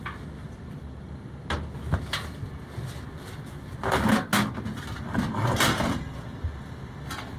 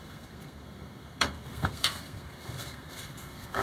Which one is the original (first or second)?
first